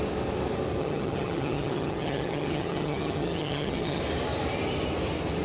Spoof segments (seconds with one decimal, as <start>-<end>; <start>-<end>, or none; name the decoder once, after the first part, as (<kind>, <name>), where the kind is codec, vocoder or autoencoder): 0.8-4.0 (vocoder, HiFi-GAN)